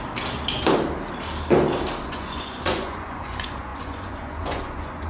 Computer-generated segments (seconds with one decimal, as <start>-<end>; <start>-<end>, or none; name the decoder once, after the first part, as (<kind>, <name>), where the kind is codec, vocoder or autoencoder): 2.0-5.1 (vocoder, Vocos)

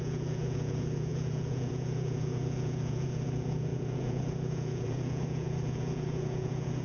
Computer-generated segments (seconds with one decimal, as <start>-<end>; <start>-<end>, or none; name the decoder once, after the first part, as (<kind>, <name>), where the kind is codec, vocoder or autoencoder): 0.0-6.8 (vocoder, Vocos)